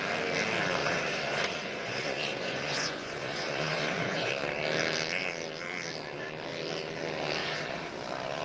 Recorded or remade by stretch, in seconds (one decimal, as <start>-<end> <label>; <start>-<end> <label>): 0.0-0.8 recorded; 0.8-4.3 remade; 4.3-7.4 recorded; 7.4-7.9 remade; 7.9-8.4 recorded